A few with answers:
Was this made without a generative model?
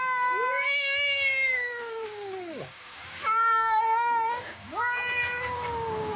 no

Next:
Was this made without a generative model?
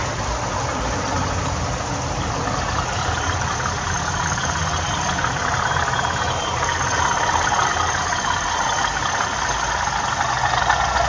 yes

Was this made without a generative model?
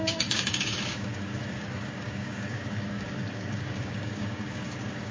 no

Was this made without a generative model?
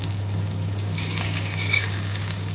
no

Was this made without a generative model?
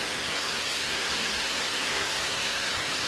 no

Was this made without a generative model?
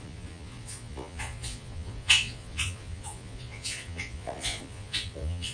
no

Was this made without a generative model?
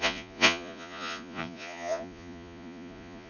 no